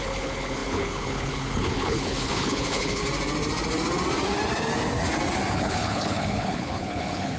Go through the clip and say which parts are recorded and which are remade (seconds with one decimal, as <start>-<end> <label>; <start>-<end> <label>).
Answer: 0.0-3.0 remade; 3.0-5.5 recorded; 5.5-7.4 remade